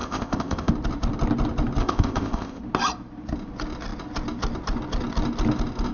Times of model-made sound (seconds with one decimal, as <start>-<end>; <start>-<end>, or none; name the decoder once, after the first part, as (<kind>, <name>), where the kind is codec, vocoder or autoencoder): 0.0-0.7 (codec, ZipCodec); 1.8-2.6